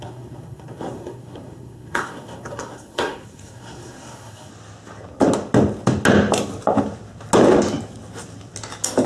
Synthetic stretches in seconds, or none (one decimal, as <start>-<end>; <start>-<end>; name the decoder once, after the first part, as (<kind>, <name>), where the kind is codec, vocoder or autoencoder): 0.0-4.5 (codec, SNAC)